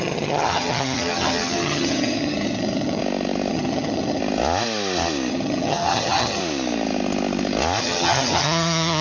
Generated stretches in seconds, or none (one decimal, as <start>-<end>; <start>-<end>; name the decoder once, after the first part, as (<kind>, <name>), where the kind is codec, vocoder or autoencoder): 0.0-3.0 (vocoder, HiFi-GAN); 3.5-4.2; 5.3-6.4; 7.8-9.0